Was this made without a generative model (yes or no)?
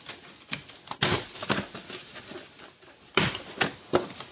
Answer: yes